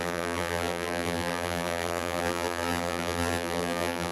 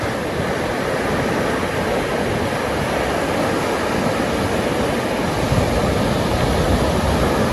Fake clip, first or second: first